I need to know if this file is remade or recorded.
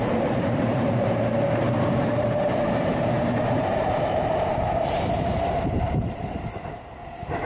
remade